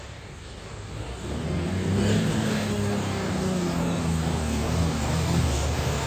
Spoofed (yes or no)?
yes